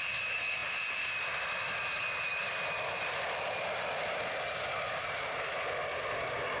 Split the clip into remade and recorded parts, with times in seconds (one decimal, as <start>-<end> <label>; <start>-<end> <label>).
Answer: 0.0-6.6 recorded